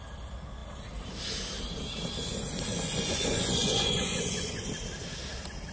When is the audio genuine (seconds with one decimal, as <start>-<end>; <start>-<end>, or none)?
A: 0.0-2.7; 4.7-5.7